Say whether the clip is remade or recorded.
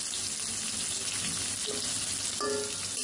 recorded